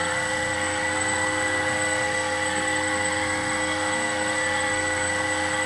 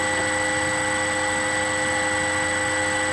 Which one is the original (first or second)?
second